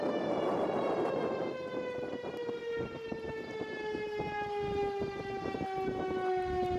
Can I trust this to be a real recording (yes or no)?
yes